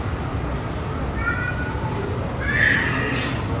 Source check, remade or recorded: recorded